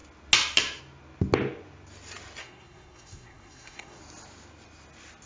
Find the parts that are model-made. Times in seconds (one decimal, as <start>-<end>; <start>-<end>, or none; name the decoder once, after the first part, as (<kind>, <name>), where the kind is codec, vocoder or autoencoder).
2.4-4.0 (codec, SNAC)